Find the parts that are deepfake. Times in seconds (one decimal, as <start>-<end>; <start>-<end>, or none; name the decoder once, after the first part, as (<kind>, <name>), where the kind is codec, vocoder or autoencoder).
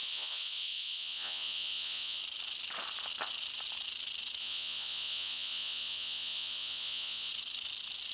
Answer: 0.0-2.2 (vocoder, Vocos); 4.4-7.3